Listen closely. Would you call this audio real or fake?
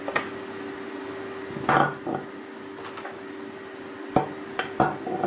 real